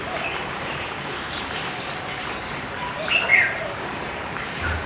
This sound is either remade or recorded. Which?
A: remade